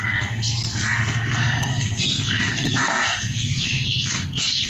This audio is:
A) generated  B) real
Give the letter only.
A